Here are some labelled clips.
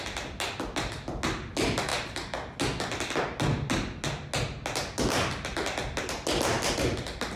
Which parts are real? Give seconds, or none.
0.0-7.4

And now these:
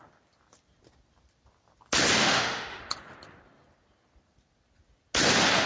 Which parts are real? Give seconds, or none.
0.0-2.2; 2.8-5.7

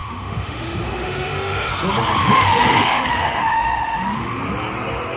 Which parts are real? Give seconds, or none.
1.7-2.2; 4.4-5.2

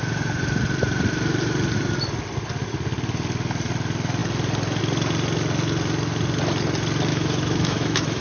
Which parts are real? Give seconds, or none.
0.0-7.1

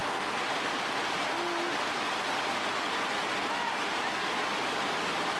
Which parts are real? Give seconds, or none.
0.0-5.4

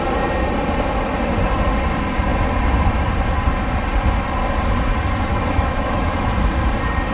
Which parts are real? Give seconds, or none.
0.0-5.3; 6.3-7.1

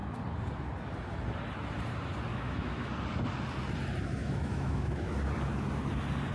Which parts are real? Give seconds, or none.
0.0-2.3; 2.9-4.2; 5.1-6.3

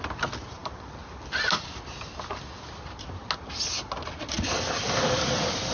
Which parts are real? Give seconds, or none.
0.0-5.7